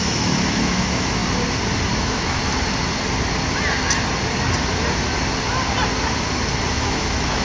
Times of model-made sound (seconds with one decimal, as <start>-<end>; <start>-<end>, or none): 0.0-1.2; 2.0-2.4; 6.7-7.4